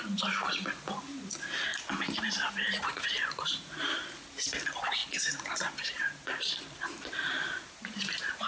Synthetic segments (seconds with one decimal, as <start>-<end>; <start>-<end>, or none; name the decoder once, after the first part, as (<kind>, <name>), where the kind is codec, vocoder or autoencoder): 0.0-1.7 (vocoder, BigVGAN v2); 2.8-8.5

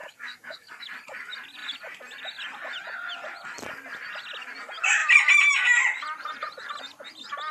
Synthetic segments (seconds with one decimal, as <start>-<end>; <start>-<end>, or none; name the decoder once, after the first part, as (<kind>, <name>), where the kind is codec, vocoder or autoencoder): 0.0-0.8 (codec, DAC)

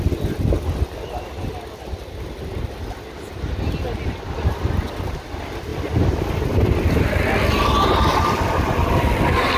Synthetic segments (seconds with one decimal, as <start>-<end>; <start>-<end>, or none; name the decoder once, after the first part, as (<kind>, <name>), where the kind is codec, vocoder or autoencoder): none